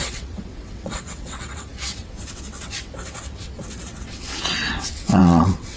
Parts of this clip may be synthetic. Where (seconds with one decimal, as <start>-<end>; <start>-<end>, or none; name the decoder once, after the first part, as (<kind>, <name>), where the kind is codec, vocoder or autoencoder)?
0.0-5.8 (vocoder, WaveNeXt)